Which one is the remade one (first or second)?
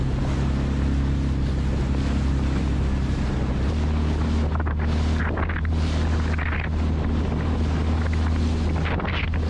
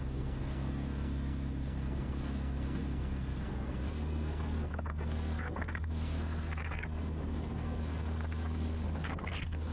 second